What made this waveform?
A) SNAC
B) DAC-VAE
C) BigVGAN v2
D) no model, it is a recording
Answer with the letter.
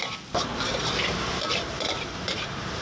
C